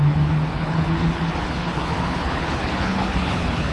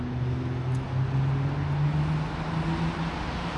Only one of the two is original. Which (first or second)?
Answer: second